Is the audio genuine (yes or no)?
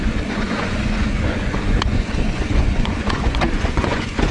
no